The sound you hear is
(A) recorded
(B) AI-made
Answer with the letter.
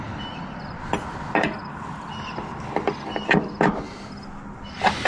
A